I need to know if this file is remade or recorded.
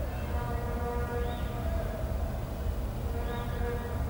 recorded